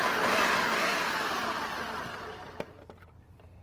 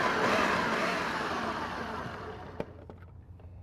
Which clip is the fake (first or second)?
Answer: first